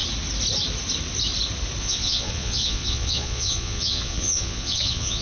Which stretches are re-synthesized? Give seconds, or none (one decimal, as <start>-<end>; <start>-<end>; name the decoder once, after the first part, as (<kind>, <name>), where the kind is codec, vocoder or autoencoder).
1.8-5.2 (vocoder, Vocos)